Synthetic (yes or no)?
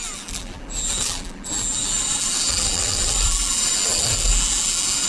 yes